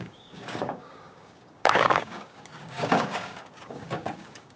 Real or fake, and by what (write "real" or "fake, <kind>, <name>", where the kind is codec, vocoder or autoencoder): fake, codec, DAC